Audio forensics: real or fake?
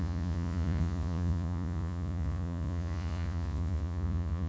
fake